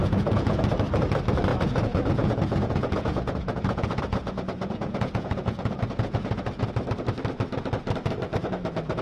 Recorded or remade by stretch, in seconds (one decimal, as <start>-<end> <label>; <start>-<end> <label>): 0.0-0.6 remade; 0.6-1.5 recorded; 1.5-6.7 remade; 6.7-9.0 recorded